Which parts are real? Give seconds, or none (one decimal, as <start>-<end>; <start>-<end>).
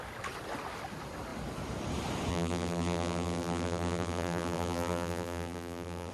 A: 0.0-2.3